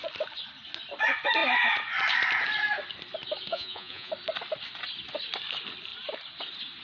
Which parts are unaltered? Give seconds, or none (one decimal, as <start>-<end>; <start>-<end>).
0.0-3.5; 4.1-6.8